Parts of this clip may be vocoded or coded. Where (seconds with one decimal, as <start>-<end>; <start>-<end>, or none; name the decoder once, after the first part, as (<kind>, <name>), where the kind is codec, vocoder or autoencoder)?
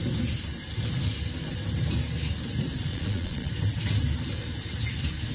2.9-3.5 (vocoder, Vocos)